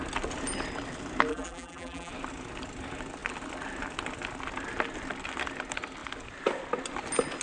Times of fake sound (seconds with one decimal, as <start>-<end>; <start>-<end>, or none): 1.3-2.1